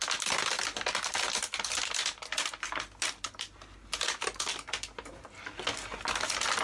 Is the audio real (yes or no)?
yes